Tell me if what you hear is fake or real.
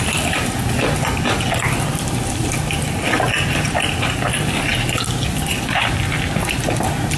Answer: real